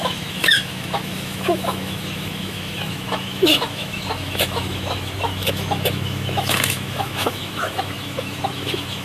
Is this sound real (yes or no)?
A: no